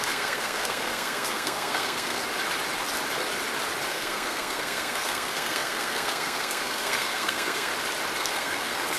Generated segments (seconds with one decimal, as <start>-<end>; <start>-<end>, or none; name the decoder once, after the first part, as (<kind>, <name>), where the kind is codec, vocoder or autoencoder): 0.0-2.2 (codec, SNAC); 3.9-7.7; 8.2-9.0